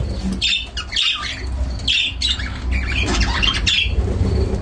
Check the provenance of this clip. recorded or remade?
recorded